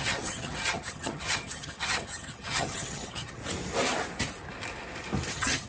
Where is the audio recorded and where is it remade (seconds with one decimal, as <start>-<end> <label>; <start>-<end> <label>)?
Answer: 0.0-3.4 remade; 3.4-5.3 recorded; 5.3-5.7 remade